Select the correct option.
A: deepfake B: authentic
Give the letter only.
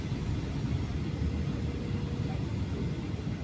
B